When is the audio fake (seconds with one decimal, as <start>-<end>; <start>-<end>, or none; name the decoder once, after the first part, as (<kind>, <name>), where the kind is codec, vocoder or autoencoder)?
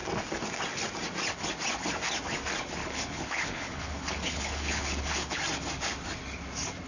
2.8-5.4 (codec, HILCodec)